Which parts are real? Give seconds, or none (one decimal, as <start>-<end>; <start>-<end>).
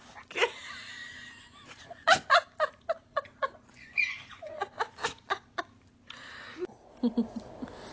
0.0-1.0; 2.4-3.1; 4.8-7.9